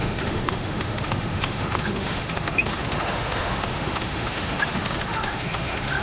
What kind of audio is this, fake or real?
fake